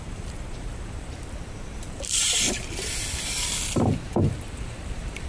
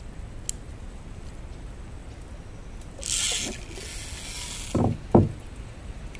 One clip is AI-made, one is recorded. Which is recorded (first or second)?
second